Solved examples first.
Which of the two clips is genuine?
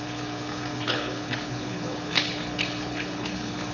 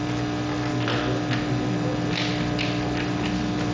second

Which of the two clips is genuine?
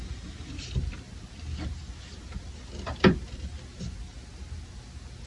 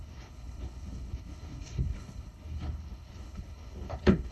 first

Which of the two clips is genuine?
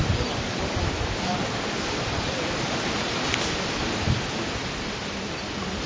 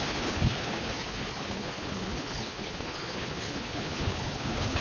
first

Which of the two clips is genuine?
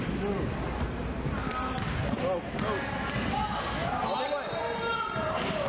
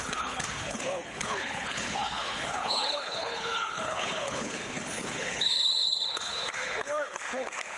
first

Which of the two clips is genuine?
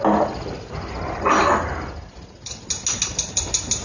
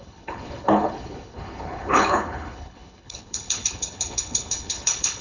first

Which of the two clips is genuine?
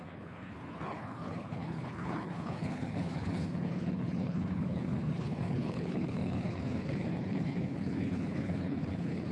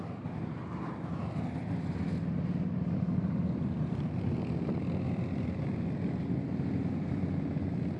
second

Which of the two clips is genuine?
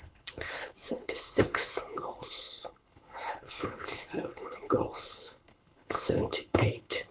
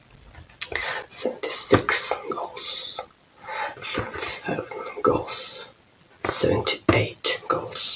second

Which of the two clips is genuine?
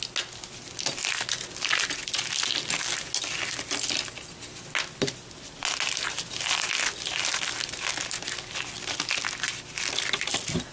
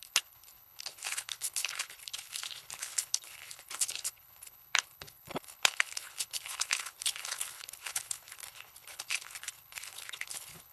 first